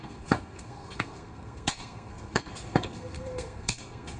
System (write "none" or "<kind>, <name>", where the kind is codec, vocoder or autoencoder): codec, SNAC